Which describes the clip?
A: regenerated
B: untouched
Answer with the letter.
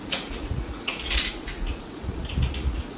A